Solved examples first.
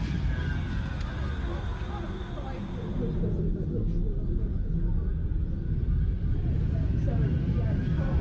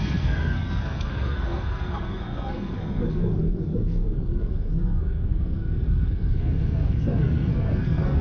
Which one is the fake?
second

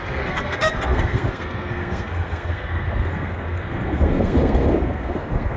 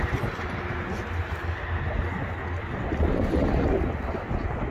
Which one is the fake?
first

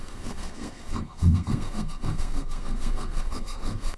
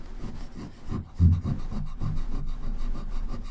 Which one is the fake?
first